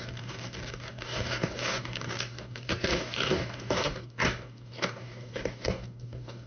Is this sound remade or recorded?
remade